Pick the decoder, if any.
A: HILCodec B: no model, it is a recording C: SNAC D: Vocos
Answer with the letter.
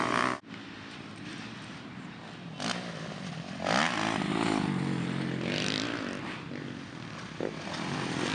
B